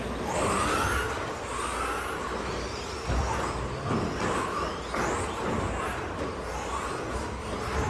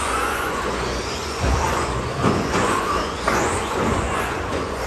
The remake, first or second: second